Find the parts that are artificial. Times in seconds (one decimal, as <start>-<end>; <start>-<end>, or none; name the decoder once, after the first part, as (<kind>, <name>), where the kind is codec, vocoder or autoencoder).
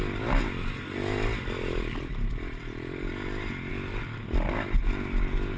1.3-3.1 (vocoder, BigVGAN v2); 3.7-4.8